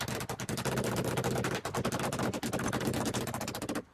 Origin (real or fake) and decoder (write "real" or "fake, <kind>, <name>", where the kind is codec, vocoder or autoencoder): real